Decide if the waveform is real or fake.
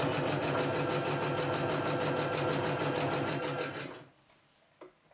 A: real